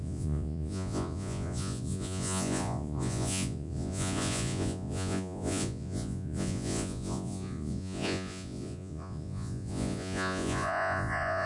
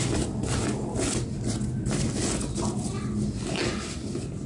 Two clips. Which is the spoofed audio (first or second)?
first